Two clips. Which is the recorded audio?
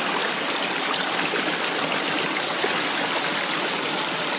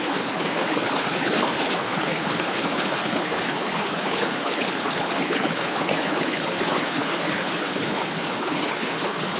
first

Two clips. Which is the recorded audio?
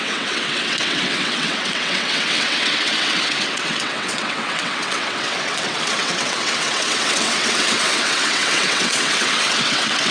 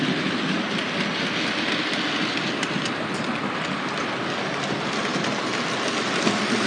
second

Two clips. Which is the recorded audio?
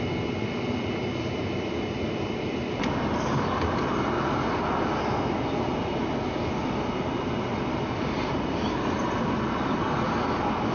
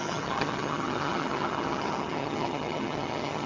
first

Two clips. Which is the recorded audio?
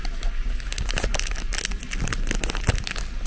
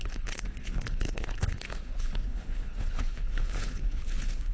first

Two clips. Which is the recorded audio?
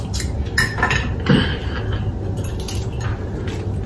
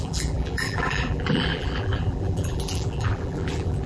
first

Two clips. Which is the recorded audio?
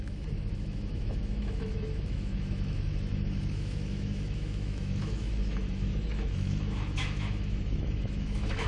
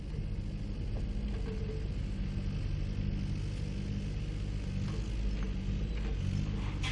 second